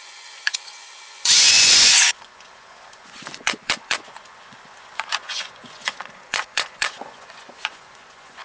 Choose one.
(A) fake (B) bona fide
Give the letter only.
A